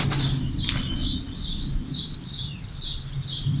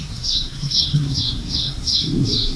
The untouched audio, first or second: first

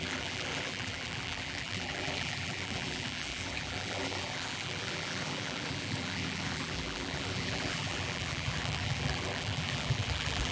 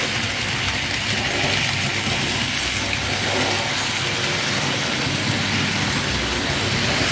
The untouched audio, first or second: second